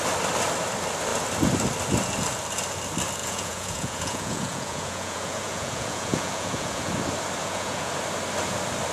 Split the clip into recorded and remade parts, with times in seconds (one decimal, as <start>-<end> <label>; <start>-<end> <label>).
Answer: 0.0-3.2 recorded; 3.2-6.9 remade; 6.9-7.4 recorded; 7.4-7.9 remade; 7.9-8.9 recorded